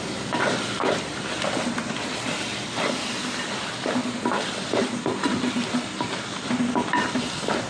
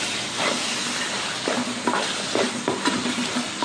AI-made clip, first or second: first